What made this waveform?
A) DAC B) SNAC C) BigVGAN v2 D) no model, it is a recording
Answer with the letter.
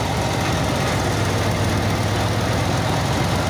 D